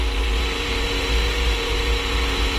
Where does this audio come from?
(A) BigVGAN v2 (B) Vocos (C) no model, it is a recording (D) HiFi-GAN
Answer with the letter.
A